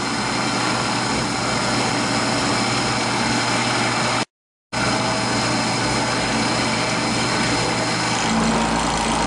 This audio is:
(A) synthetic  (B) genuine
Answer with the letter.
B